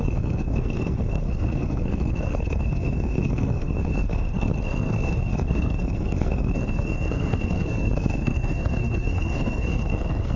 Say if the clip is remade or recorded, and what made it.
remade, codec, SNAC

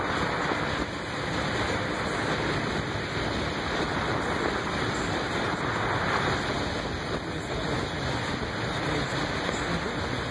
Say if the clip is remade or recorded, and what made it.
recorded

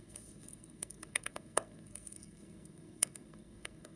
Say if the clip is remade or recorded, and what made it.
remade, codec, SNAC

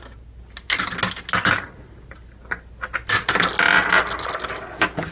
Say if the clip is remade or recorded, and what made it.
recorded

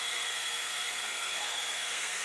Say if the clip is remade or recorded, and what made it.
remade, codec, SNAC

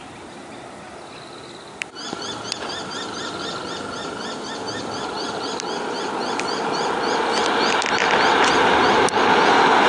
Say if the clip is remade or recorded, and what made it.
recorded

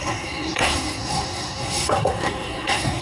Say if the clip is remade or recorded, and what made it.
remade, codec, SNAC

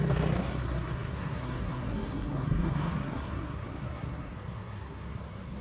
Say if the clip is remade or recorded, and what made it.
remade, codec, SNAC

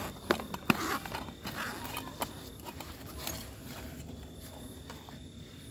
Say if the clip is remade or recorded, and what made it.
recorded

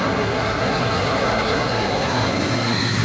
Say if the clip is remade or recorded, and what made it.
remade, codec, SNAC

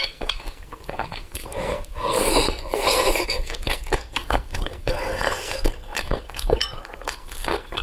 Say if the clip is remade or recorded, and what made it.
remade, codec, SNAC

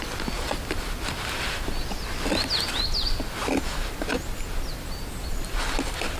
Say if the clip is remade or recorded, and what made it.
recorded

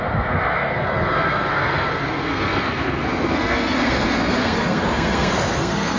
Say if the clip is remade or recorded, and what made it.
remade, codec, SNAC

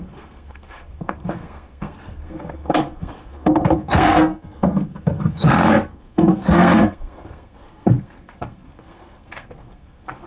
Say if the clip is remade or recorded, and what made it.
remade, codec, SNAC